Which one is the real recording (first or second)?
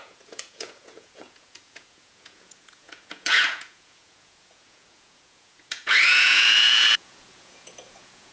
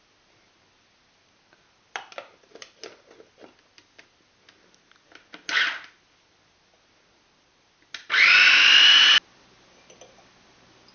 second